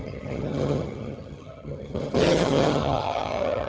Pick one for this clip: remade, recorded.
remade